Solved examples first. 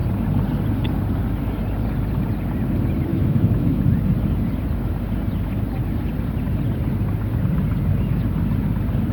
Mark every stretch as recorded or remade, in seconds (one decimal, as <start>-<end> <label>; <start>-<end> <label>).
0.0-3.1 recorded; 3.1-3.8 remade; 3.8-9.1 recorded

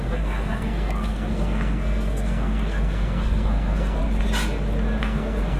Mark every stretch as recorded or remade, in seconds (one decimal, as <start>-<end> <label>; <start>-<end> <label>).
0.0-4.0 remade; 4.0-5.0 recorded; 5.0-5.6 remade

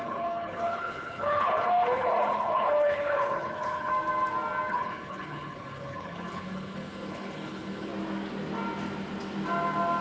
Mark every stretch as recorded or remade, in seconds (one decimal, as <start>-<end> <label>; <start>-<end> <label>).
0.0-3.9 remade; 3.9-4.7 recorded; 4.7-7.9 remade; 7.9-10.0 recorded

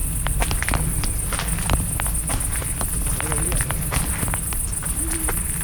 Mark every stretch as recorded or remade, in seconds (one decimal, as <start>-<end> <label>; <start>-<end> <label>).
0.0-5.6 recorded

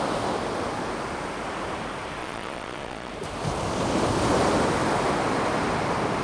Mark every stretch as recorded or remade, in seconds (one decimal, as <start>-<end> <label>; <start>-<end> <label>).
0.0-2.2 recorded; 2.2-3.1 remade; 3.1-6.2 recorded

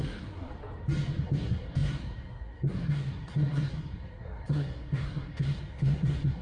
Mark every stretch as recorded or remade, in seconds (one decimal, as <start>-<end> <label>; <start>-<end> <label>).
0.0-0.5 remade; 0.5-1.2 recorded; 1.2-6.4 remade

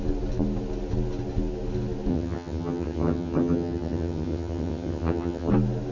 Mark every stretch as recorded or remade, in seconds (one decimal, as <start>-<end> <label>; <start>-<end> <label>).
0.0-2.1 recorded; 2.1-5.5 remade; 5.5-5.9 recorded